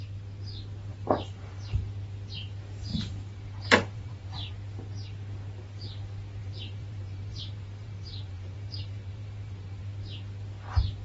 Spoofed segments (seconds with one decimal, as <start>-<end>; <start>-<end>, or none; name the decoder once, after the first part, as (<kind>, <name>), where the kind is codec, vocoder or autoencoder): 0.9-1.9 (vocoder, BigVGAN v2); 2.9-4.5; 6.4-9.8